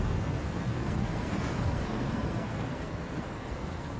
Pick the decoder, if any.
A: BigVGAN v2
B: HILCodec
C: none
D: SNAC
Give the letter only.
D